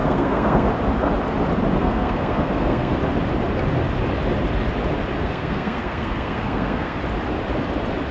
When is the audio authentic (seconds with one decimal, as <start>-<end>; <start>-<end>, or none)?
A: 0.7-1.8; 3.0-5.2; 7.0-8.1